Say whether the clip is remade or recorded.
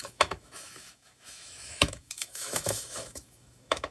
remade